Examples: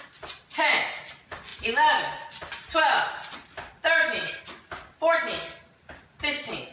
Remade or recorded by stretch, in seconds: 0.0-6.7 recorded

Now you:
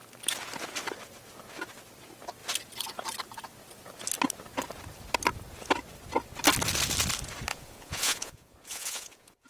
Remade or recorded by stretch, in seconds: 0.0-7.5 recorded; 7.5-9.5 remade

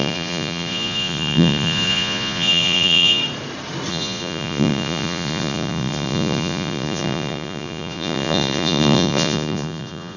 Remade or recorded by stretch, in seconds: 0.0-3.2 remade; 3.2-3.9 recorded; 3.9-10.2 remade

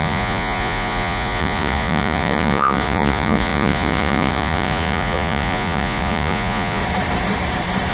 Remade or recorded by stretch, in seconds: 0.0-6.8 remade; 6.8-7.9 recorded